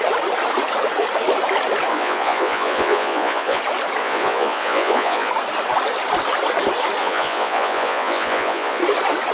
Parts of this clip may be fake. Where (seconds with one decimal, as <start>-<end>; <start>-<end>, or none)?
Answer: 1.9-3.6; 4.0-5.3; 7.0-8.8